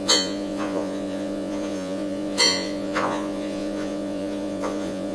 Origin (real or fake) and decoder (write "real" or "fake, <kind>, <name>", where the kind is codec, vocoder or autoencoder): fake, vocoder, Vocos